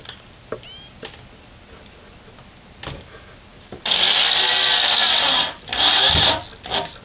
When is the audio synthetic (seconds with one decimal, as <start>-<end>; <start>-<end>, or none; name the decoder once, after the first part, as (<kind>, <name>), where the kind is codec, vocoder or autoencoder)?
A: none